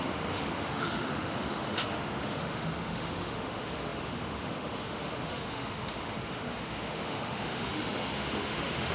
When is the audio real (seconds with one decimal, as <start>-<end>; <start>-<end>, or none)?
none